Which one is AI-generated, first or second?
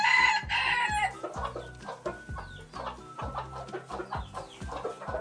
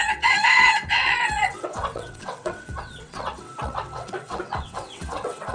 second